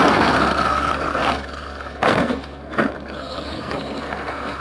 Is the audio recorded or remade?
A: remade